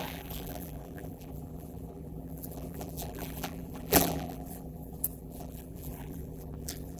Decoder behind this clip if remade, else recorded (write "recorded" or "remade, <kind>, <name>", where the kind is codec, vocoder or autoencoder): remade, vocoder, BigVGAN v2